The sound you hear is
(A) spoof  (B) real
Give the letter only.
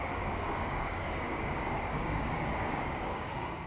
A